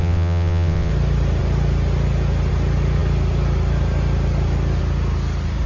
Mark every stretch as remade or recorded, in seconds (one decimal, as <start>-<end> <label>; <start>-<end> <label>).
0.0-0.9 remade; 0.9-5.7 recorded